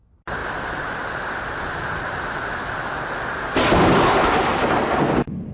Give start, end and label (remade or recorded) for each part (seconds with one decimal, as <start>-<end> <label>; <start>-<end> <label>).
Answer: 0.0-5.5 recorded

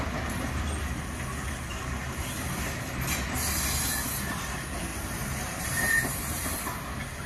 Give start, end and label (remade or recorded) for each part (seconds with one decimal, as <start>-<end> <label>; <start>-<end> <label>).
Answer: 0.0-4.9 recorded; 4.9-6.5 remade; 6.5-7.3 recorded